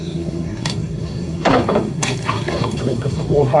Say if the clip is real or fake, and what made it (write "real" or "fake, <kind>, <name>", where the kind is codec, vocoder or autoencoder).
fake, codec, SNAC